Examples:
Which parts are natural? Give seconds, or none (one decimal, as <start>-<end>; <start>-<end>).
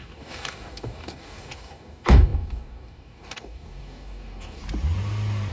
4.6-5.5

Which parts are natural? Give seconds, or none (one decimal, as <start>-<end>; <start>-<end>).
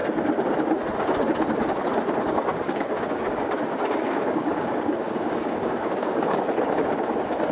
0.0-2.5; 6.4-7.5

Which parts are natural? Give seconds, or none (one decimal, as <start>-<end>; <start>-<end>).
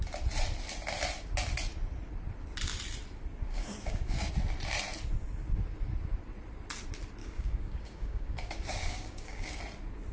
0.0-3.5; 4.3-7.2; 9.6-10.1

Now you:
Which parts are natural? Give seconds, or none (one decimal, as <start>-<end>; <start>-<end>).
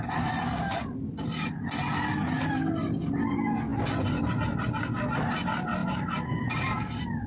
0.0-7.3